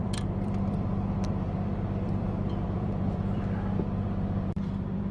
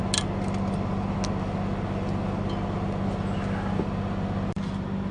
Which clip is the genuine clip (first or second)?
second